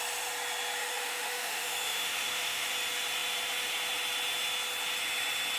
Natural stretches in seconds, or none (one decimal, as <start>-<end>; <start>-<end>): 0.0-0.8; 2.7-5.6